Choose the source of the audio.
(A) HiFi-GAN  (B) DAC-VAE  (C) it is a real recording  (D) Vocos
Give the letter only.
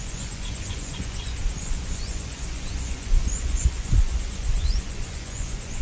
D